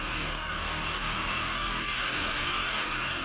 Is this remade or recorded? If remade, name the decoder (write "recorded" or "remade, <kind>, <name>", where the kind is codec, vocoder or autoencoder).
remade, codec, DAC